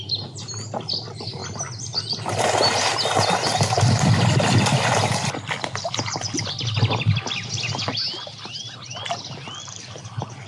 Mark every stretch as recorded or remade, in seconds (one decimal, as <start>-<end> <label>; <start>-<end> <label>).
0.0-10.5 recorded